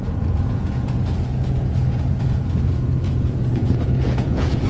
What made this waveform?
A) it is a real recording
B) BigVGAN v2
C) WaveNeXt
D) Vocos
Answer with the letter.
D